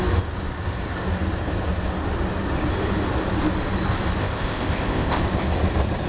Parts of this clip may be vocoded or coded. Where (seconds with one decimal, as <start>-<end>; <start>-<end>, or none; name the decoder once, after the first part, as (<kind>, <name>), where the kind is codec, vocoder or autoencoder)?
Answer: 4.2-5.2 (codec, ZipCodec)